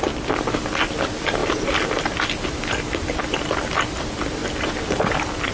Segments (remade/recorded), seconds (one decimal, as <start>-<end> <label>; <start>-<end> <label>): 0.0-5.5 recorded